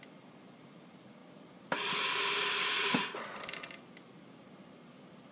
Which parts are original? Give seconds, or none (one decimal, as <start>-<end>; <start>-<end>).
none